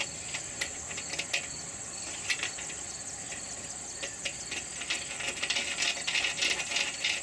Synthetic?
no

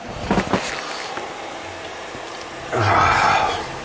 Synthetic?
no